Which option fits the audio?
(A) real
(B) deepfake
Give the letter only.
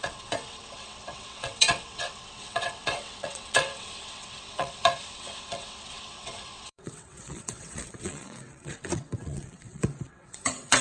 B